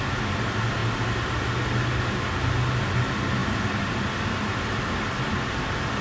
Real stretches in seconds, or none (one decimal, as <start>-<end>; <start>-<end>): 3.4-4.7